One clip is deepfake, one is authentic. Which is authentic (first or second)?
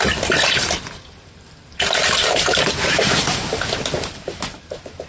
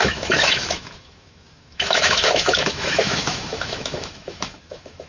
first